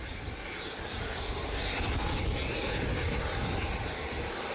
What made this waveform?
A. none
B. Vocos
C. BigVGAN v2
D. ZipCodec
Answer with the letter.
A